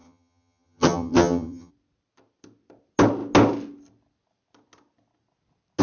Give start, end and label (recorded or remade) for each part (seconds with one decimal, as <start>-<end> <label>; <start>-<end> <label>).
0.0-1.7 remade; 1.7-5.8 recorded